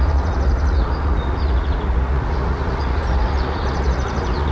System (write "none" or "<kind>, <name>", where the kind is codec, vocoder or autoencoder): vocoder, Vocos